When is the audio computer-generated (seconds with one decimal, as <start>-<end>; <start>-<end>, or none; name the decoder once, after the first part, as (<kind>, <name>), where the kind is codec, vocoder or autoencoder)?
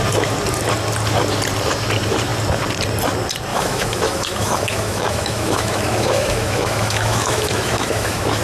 3.5-8.4 (autoencoder, DAC-VAE)